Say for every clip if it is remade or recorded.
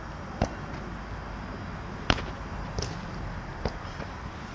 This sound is recorded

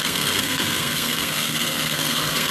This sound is remade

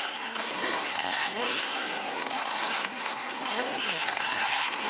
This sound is remade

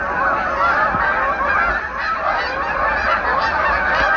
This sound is recorded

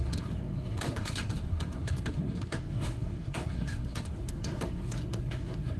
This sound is remade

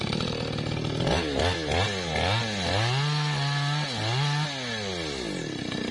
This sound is recorded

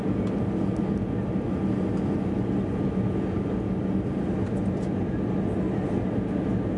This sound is recorded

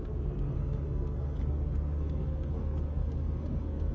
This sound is remade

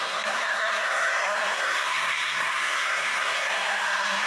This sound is remade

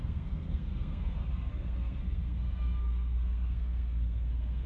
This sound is remade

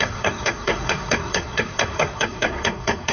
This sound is remade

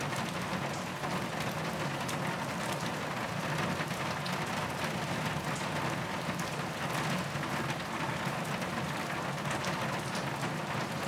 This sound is recorded